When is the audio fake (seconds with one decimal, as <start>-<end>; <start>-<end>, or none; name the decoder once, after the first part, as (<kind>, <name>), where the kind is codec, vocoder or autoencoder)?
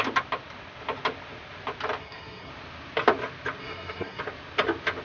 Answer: 2.0-2.5 (codec, SNAC); 3.6-4.2